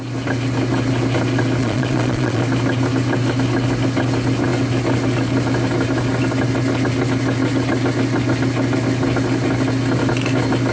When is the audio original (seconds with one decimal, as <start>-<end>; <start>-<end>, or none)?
0.0-1.6; 2.4-10.7